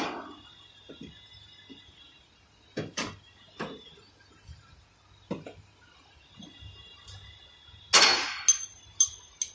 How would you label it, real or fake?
real